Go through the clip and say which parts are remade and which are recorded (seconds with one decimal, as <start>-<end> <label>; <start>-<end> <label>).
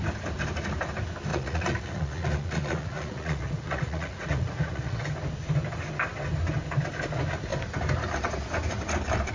0.0-1.3 recorded; 1.3-5.0 remade; 5.0-9.3 recorded